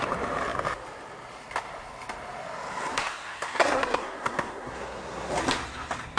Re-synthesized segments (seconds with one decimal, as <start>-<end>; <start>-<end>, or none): 2.9-5.3